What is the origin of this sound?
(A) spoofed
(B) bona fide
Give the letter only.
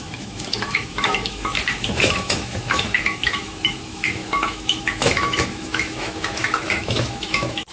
A